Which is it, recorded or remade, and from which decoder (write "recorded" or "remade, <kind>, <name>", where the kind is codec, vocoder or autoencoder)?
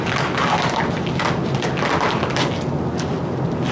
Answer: recorded